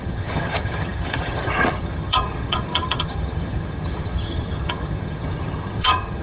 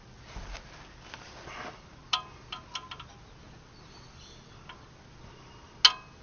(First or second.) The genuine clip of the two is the second